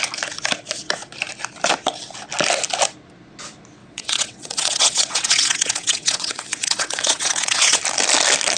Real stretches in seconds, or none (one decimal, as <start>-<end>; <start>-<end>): 0.0-3.8; 7.8-8.6